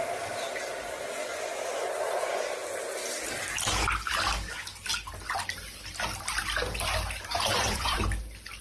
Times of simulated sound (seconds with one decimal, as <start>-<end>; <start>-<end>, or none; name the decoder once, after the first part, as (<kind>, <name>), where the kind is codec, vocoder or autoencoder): 0.8-2.4 (vocoder, Vocos); 7.3-8.0